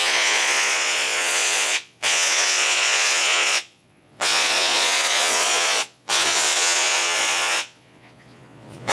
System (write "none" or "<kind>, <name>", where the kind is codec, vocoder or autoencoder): vocoder, Vocos